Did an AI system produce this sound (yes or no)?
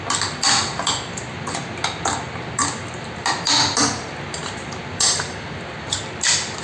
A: no